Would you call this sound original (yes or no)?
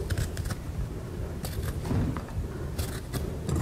yes